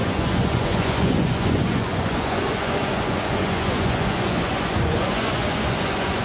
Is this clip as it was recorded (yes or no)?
no